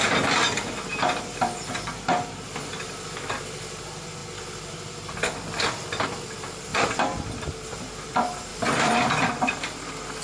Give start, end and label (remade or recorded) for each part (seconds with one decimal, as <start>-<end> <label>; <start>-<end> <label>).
0.0-2.7 recorded; 2.7-3.8 remade; 3.8-6.7 recorded; 6.7-8.1 remade; 8.1-8.5 recorded; 8.5-9.1 remade; 9.1-10.2 recorded